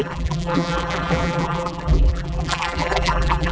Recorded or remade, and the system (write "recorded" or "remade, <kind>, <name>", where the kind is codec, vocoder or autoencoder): remade, vocoder, BigVGAN v2